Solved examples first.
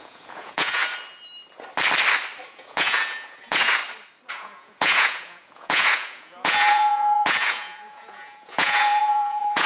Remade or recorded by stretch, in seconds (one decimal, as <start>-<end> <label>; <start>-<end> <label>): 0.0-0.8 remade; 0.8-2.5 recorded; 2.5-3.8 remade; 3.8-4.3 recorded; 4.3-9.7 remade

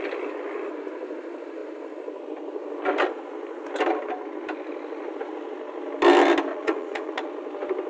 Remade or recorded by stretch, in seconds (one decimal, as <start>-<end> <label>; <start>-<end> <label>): 0.0-6.5 recorded; 6.5-7.3 remade; 7.3-7.9 recorded

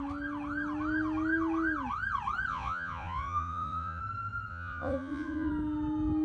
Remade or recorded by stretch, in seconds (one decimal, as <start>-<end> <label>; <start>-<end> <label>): 0.0-2.5 recorded; 2.5-4.0 remade; 4.0-4.5 recorded; 4.5-5.5 remade; 5.5-6.2 recorded